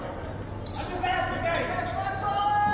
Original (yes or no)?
yes